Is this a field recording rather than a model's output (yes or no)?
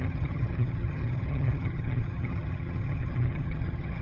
no